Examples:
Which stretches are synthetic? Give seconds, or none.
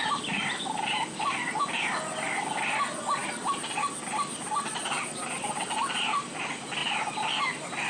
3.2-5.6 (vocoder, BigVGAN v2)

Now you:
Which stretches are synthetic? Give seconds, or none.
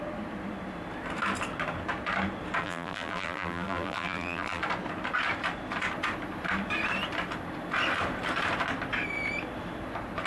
2.6-4.6 (vocoder, BigVGAN v2)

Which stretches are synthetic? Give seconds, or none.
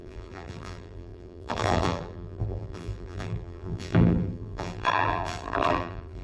0.0-6.2 (vocoder, BigVGAN v2)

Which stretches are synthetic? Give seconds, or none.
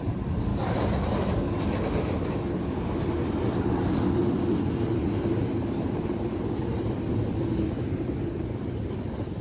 0.0-0.5 (vocoder, BigVGAN v2); 1.6-9.4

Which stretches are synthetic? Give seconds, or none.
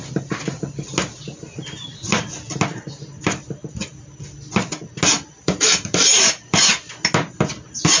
5.4-6.7 (vocoder, BigVGAN v2)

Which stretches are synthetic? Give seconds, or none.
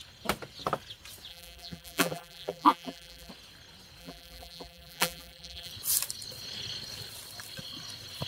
1.3-3.3 (vocoder, BigVGAN v2); 4.0-5.7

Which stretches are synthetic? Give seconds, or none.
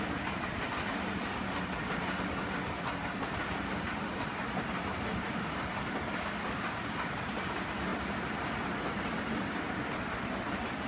5.1-5.7 (vocoder, BigVGAN v2); 7.9-9.2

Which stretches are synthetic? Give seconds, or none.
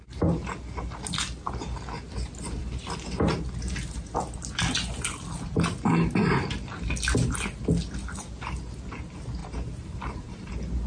9.4-10.5 (vocoder, BigVGAN v2)